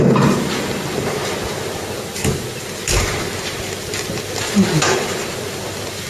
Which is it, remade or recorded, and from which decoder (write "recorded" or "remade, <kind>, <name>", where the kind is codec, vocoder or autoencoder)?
recorded